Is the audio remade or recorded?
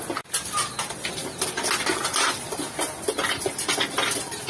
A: recorded